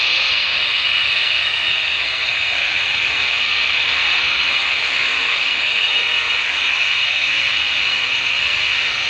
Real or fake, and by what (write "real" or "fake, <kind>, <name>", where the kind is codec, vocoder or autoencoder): fake, codec, SNAC